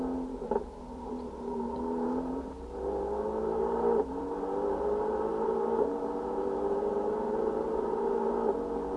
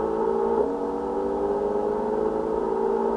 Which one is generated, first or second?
first